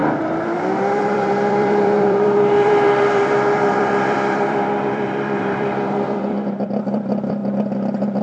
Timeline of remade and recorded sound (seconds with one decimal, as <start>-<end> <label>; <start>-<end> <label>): 0.0-7.4 remade; 7.4-8.2 recorded